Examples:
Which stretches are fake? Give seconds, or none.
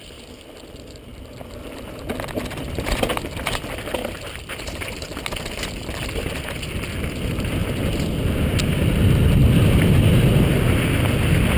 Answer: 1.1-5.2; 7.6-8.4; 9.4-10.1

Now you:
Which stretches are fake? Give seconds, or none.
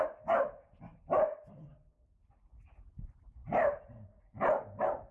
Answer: none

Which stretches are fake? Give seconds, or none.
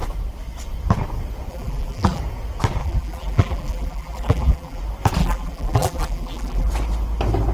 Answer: 1.5-2.2; 2.8-4.8; 5.2-6.7